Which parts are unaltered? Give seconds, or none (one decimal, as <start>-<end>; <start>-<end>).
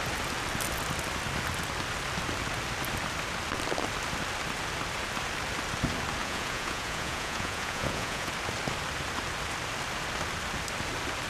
0.0-6.2; 8.3-11.3